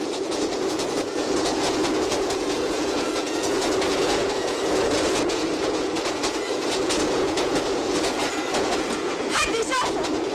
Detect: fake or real fake